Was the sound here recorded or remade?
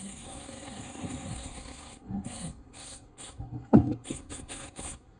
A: remade